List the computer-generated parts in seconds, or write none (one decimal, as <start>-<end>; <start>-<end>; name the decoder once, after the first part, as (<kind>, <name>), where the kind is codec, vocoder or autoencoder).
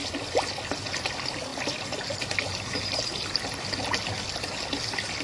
none